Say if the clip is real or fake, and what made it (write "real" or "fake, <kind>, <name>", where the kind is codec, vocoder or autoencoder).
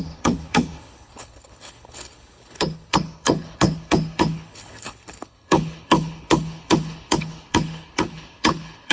fake, codec, HILCodec